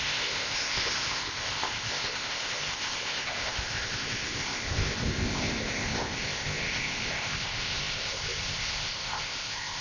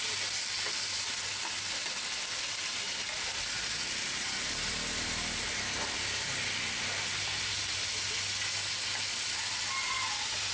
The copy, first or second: first